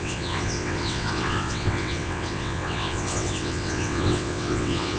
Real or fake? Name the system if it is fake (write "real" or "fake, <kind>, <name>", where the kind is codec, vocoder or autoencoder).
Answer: fake, vocoder, WaveNeXt